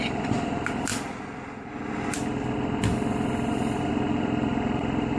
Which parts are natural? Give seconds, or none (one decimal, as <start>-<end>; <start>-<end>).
0.0-5.2